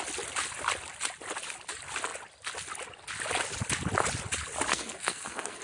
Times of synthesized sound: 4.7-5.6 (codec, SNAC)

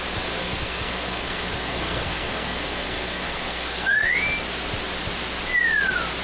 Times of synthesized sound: 0.4-4.1 (codec, SNAC)

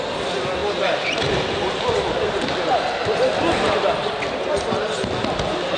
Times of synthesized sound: none

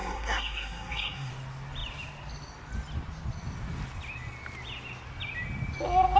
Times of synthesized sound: 0.0-1.3 (codec, SNAC)

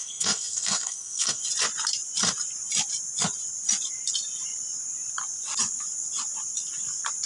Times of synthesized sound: 0.0-1.4 (codec, SNAC)

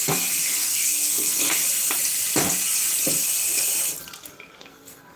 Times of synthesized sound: 0.0-1.6 (codec, SNAC); 4.6-5.2

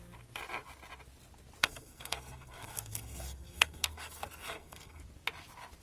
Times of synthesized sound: 1.6-5.0 (codec, SNAC)

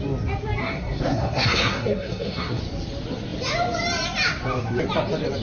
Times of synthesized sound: 0.6-2.6 (codec, SNAC)